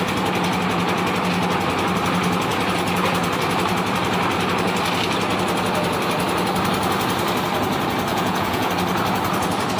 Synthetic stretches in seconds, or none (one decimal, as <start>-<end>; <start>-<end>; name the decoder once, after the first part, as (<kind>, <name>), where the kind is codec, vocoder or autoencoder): 8.1-8.7 (vocoder, Vocos)